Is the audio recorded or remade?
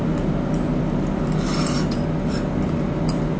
recorded